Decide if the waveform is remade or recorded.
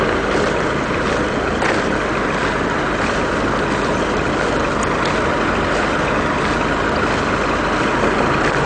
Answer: recorded